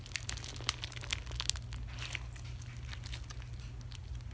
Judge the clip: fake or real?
real